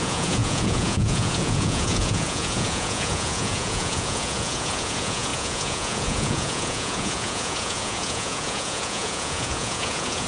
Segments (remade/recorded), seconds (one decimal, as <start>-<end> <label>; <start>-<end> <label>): 0.0-10.3 remade